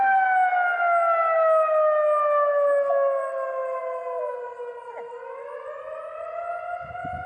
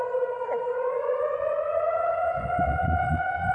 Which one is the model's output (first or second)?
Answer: second